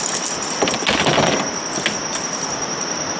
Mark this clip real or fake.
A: real